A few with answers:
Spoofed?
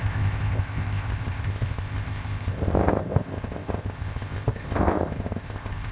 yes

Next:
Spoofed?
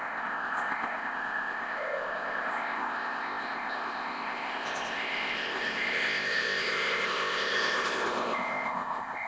yes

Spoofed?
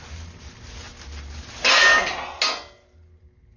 no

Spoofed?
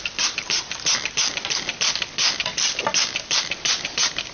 no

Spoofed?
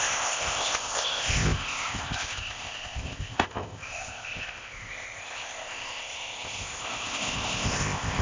yes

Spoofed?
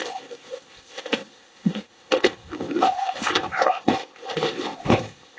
yes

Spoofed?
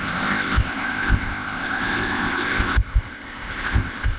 yes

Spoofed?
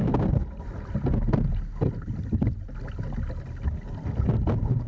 no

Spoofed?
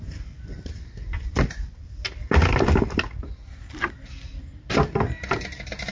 no